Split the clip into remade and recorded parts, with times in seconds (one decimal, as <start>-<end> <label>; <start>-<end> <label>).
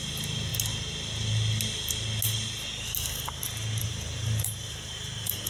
0.0-0.5 remade; 0.5-3.8 recorded; 3.8-5.5 remade